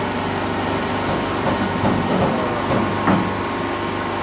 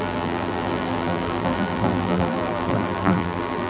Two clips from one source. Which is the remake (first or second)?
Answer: second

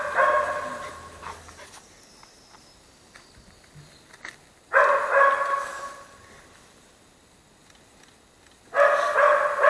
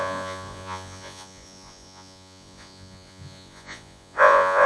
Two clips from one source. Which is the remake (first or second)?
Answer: second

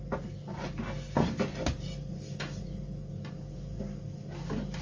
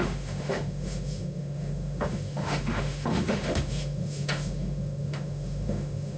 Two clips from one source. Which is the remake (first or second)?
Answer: second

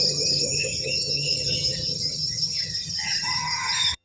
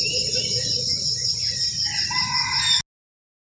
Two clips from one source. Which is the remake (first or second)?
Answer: first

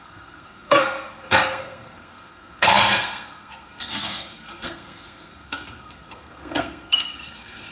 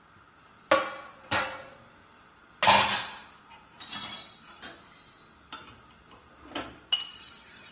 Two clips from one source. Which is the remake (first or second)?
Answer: first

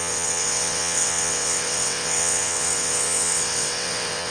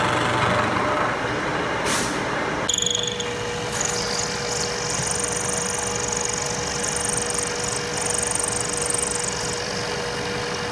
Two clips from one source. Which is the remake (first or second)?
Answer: first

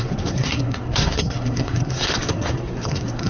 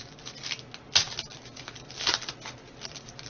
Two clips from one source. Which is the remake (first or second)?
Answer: first